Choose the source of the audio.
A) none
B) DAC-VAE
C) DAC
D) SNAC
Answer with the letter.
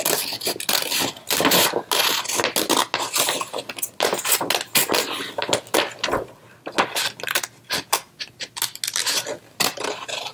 A